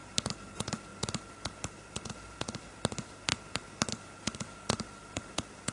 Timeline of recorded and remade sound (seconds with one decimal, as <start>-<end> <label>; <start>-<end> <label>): 0.0-5.7 recorded